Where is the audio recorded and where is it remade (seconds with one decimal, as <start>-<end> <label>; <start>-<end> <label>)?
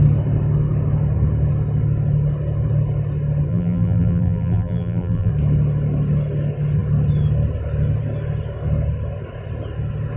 0.0-3.5 recorded; 3.5-5.3 remade; 5.3-10.2 recorded